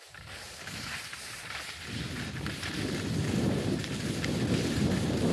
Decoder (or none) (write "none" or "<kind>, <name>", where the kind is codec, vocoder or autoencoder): none